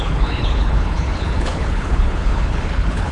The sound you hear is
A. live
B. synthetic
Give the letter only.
B